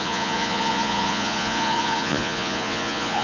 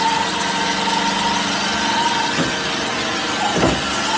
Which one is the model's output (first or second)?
first